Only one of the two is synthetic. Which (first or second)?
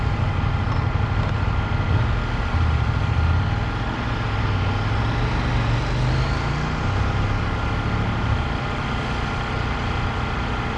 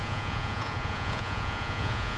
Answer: second